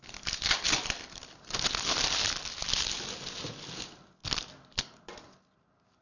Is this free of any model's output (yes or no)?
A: yes